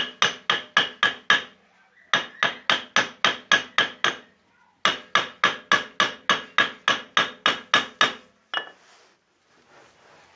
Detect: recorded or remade recorded